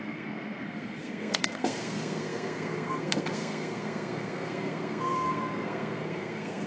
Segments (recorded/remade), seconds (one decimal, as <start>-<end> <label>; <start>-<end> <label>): 0.0-6.7 remade